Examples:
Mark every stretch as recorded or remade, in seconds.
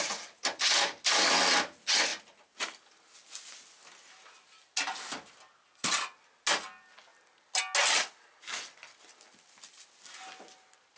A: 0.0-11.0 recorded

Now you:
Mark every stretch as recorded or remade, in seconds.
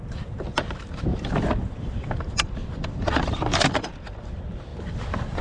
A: 0.0-1.1 recorded; 1.1-4.3 remade; 4.3-5.4 recorded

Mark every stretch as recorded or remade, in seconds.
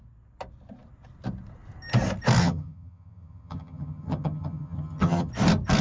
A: 0.0-2.4 recorded; 2.4-5.3 remade; 5.3-5.8 recorded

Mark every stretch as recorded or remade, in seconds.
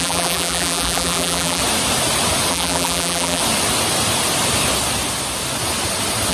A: 0.0-1.6 remade; 1.6-2.5 recorded; 2.5-3.4 remade; 3.4-6.3 recorded